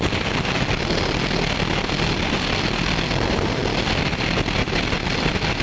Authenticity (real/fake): real